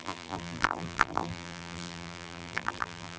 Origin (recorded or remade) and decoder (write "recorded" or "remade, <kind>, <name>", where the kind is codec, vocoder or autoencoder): remade, vocoder, BigVGAN v2